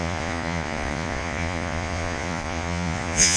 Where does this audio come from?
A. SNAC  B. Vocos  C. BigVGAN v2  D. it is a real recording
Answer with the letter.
B